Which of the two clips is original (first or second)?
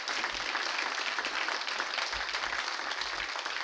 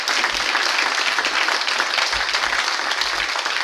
second